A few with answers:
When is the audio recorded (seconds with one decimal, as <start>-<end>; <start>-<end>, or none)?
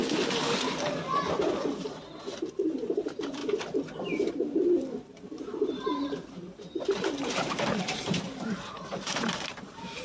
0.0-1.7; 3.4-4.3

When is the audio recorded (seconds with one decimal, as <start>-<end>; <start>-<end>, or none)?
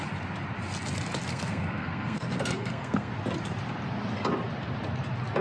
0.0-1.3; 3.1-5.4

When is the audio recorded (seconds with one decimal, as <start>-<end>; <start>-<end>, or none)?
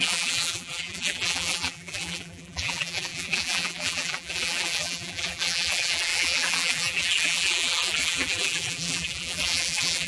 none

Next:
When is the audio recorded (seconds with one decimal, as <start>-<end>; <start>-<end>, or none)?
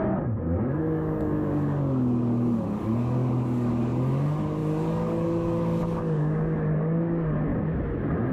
7.5-8.3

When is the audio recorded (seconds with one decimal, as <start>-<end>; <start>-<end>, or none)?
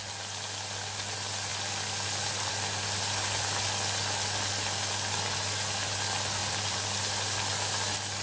0.0-6.4; 7.0-8.2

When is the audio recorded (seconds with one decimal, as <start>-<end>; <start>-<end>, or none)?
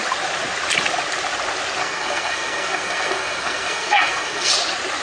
0.0-1.8; 4.5-5.0